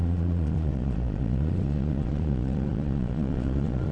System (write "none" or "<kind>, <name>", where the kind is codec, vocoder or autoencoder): vocoder, Vocos